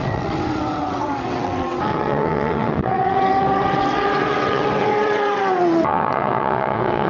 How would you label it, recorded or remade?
remade